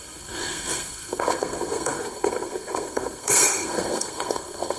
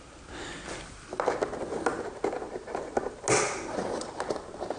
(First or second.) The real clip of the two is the second